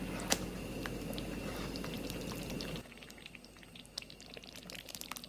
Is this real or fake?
real